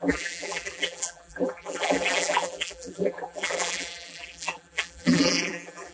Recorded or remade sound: remade